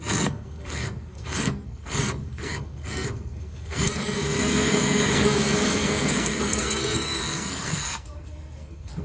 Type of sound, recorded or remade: remade